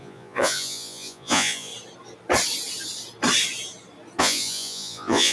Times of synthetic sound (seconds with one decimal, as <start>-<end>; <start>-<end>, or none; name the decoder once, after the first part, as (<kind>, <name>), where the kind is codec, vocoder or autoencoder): 0.0-1.7 (vocoder, Vocos); 4.2-5.3